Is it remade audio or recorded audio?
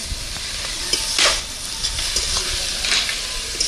recorded